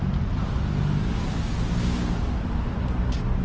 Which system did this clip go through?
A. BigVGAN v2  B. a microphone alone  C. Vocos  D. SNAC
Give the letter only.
B